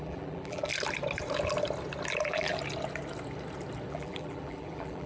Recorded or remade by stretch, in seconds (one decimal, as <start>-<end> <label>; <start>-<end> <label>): 0.0-0.7 remade; 0.7-2.1 recorded; 2.1-2.5 remade; 2.5-3.9 recorded; 3.9-5.1 remade

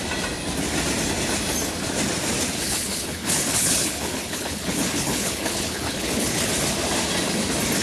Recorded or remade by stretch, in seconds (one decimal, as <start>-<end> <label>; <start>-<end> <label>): 0.0-2.6 recorded; 2.6-6.5 remade; 6.5-7.8 recorded

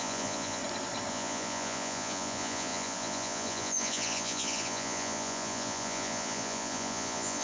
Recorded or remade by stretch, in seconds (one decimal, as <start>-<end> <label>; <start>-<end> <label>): 0.0-0.6 remade; 0.6-1.1 recorded; 1.1-7.4 remade